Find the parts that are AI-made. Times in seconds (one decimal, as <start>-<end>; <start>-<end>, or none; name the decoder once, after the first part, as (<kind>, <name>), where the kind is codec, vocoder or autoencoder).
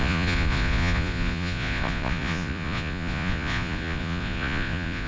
0.0-5.1 (vocoder, Vocos)